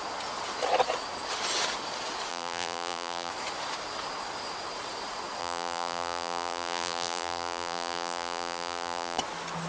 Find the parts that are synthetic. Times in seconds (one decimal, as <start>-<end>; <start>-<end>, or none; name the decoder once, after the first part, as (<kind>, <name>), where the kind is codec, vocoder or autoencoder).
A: 2.3-3.3 (vocoder, BigVGAN v2); 5.4-9.2